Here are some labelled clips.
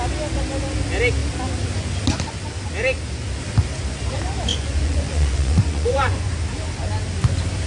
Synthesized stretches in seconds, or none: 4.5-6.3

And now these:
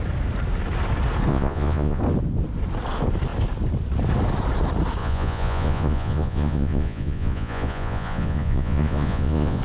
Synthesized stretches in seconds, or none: 1.3-2.0; 5.0-9.6

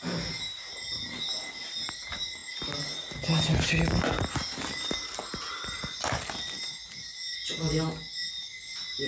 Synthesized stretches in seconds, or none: none

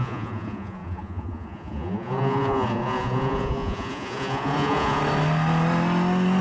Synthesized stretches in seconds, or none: 0.0-5.0

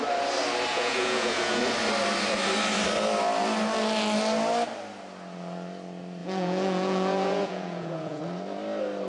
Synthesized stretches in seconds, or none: 0.7-1.6; 6.2-8.2